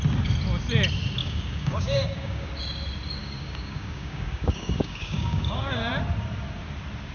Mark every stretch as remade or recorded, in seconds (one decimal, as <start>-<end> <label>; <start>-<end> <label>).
0.0-1.2 recorded; 1.2-2.5 remade; 2.5-3.2 recorded; 3.2-5.9 remade; 5.9-7.1 recorded